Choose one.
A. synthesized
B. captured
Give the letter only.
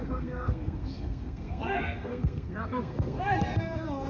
A